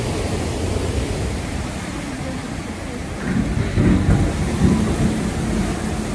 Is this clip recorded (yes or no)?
yes